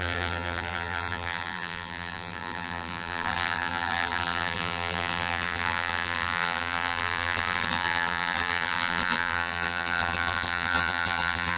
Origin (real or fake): fake